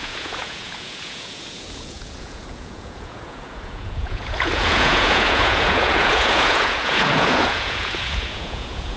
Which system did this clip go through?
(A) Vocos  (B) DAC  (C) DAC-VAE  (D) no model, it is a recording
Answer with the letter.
A